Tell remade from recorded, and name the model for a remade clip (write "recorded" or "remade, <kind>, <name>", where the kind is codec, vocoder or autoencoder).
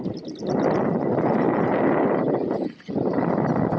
recorded